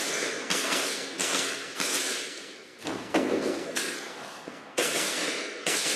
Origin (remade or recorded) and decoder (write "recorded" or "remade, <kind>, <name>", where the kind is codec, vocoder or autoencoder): remade, codec, SNAC